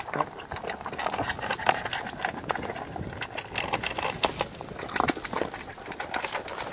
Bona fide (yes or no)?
yes